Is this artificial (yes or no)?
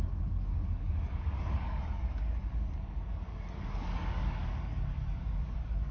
yes